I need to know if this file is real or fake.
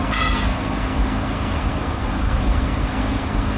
fake